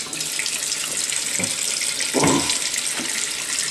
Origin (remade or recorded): recorded